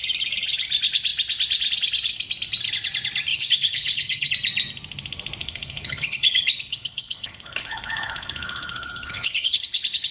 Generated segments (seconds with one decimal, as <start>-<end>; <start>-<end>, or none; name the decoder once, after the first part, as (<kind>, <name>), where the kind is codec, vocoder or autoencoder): 3.3-4.3 (codec, HILCodec); 5.4-10.1